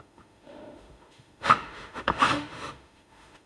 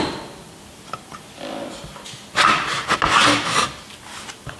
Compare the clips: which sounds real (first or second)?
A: second